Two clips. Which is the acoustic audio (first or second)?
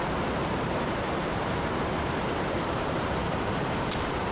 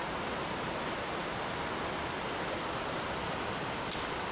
second